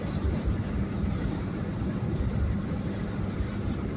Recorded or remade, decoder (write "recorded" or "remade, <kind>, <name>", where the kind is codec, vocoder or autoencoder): remade, vocoder, BigVGAN v2